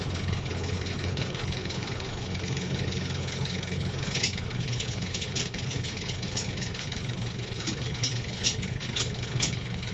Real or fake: fake